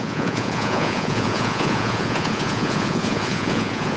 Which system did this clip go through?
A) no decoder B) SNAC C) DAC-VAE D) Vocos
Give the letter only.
D